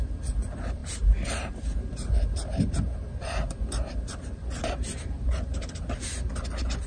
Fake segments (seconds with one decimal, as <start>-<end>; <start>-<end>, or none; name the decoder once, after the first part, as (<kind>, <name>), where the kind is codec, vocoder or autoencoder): none